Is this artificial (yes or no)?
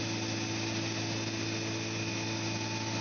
no